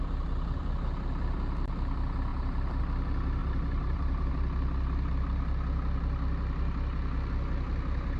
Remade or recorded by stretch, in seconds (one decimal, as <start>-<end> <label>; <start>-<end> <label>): 0.0-2.3 recorded; 2.3-2.8 remade; 2.8-3.4 recorded; 3.4-4.3 remade; 4.3-8.2 recorded